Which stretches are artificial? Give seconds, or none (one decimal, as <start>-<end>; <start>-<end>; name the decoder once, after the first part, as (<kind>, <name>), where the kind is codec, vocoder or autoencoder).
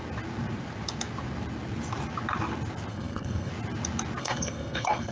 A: 2.9-3.5 (codec, SNAC); 4.2-5.1